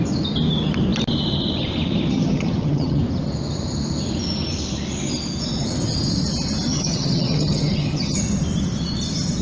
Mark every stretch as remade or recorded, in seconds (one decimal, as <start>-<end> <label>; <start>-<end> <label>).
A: 0.0-2.1 recorded; 2.1-3.0 remade; 3.0-6.7 recorded; 6.7-8.2 remade; 8.2-9.4 recorded